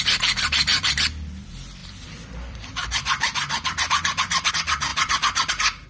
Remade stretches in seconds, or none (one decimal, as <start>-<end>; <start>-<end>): 1.8-4.5; 4.9-5.5

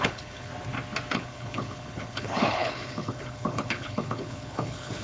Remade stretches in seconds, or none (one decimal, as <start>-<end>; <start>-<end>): 0.0-0.5; 1.1-5.0

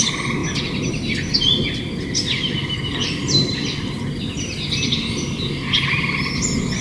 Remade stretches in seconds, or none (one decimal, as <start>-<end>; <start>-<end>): none

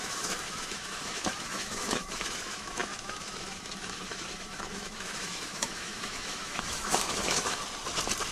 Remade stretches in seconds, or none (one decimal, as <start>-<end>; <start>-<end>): 0.0-7.6

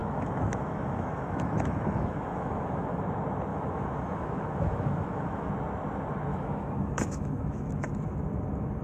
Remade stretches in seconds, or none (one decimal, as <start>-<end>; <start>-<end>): 0.0-3.0; 3.5-5.5; 6.3-7.9

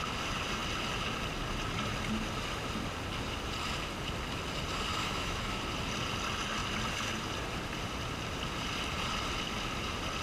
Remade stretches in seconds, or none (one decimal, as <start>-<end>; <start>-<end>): 5.0-5.6

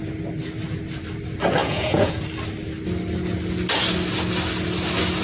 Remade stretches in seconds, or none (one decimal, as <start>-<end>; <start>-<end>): 1.6-2.2